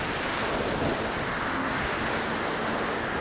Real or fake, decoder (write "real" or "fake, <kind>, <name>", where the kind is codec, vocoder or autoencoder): real